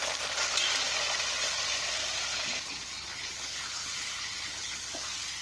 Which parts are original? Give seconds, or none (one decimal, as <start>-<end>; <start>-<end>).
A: 0.0-2.3; 4.9-5.4